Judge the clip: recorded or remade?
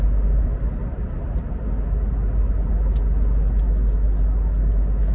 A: recorded